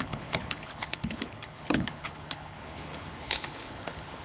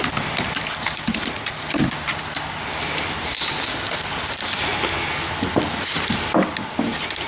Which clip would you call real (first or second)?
second